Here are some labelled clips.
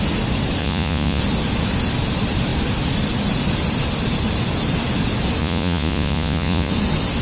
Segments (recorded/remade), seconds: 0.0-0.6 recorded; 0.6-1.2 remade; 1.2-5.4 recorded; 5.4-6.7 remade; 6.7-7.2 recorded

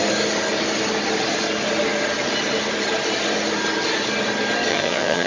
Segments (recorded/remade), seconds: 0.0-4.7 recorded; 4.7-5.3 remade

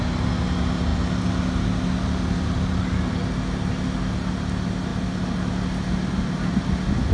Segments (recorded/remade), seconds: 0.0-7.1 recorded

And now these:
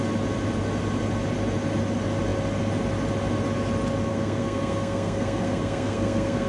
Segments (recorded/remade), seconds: 0.0-4.1 recorded; 4.1-6.5 remade

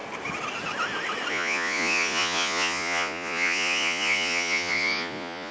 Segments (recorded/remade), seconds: 0.0-1.3 recorded; 1.3-5.5 remade

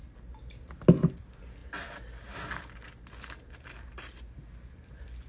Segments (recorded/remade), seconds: 0.0-5.3 recorded

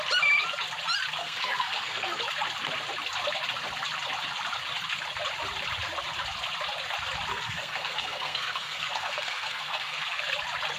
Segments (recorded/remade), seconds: 0.0-1.2 recorded; 1.2-2.2 remade; 2.2-7.3 recorded; 7.3-10.2 remade; 10.2-10.8 recorded